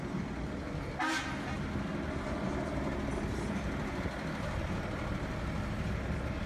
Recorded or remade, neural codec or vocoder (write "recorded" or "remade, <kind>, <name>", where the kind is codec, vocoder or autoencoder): recorded